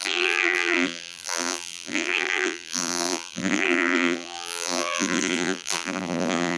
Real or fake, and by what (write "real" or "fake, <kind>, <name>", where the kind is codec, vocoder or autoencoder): fake, vocoder, BigVGAN v2